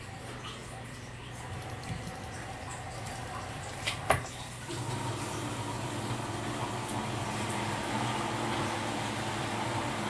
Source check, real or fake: real